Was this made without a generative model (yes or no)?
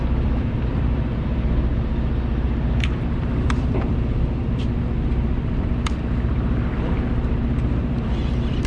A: no